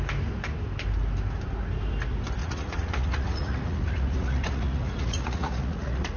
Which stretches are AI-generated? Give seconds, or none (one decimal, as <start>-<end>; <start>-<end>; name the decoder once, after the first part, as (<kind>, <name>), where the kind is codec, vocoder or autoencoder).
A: 2.4-6.2 (vocoder, Vocos)